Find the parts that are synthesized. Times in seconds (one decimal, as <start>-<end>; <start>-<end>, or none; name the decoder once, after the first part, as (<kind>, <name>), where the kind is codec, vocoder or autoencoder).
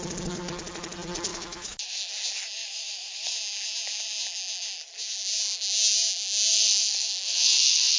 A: 1.3-2.0 (autoencoder, DAC-VAE); 2.6-3.3; 6.5-8.0